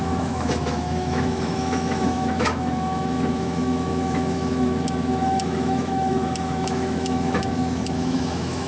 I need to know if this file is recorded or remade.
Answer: remade